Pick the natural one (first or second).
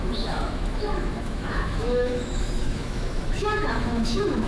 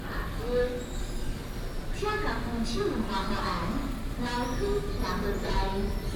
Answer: second